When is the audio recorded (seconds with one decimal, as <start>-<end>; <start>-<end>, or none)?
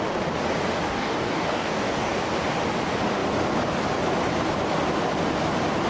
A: 0.0-0.9; 2.2-5.9